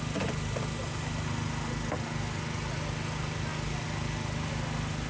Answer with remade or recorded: recorded